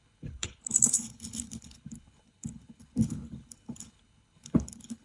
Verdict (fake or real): fake